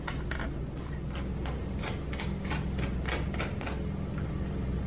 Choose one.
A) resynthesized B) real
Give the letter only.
B